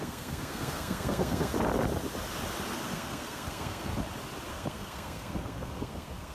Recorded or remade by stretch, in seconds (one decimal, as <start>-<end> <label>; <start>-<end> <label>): 0.0-1.5 remade; 1.5-2.7 recorded; 2.7-3.9 remade; 3.9-4.5 recorded; 4.5-6.3 remade